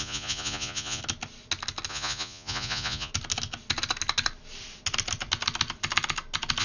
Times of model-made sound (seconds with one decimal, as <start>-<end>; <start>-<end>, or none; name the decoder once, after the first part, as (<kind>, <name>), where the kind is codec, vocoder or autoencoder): 0.0-1.0 (vocoder, Vocos); 1.9-3.1